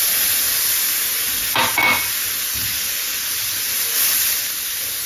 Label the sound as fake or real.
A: real